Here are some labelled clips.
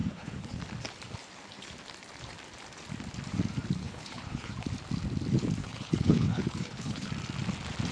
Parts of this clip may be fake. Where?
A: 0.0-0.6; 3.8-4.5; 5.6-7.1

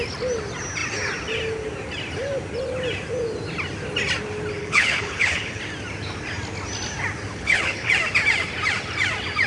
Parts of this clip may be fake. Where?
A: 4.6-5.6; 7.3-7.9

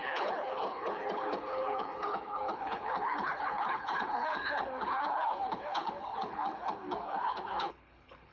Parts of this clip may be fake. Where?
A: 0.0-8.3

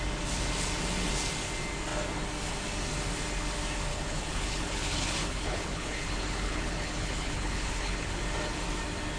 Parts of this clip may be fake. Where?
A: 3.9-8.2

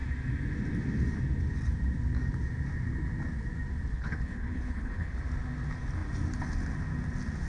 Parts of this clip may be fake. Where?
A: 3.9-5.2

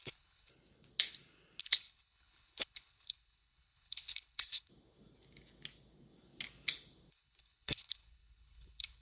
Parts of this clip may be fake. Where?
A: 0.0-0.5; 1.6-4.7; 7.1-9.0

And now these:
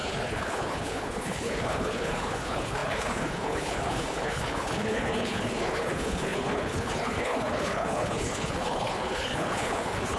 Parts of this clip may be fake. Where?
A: 0.0-10.2